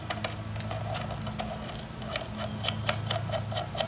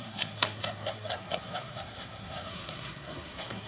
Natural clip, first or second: first